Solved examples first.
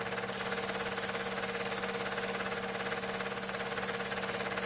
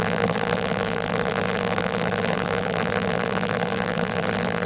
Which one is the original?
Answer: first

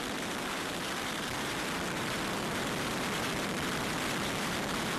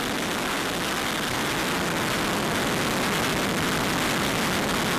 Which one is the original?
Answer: second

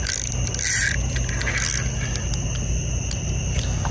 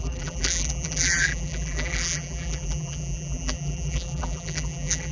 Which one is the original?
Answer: first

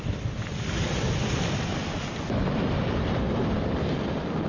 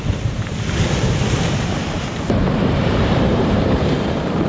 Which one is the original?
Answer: first